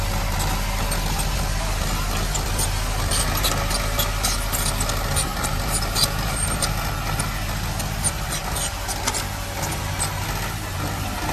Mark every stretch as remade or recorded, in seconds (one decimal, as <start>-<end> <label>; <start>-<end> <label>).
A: 0.0-5.3 recorded; 5.3-6.9 remade; 6.9-11.3 recorded